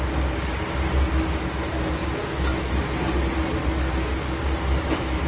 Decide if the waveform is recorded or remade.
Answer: recorded